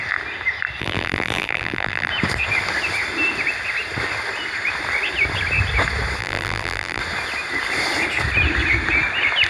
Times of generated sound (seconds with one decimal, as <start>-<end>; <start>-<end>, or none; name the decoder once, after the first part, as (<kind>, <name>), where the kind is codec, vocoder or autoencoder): 0.8-2.1 (vocoder, BigVGAN v2); 6.2-7.0